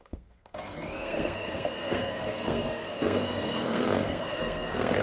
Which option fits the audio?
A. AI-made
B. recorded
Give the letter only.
A